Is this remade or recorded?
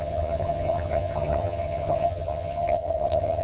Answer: remade